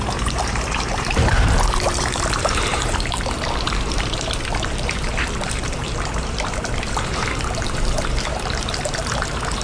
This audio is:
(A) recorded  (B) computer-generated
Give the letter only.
B